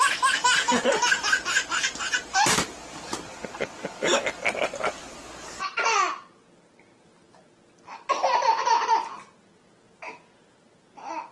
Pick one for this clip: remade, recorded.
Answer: recorded